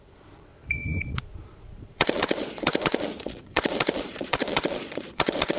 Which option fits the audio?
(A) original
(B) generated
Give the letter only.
B